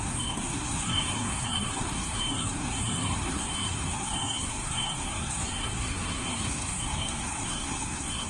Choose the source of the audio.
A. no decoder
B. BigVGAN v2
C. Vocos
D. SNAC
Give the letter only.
D